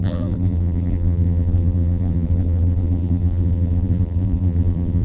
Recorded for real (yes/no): no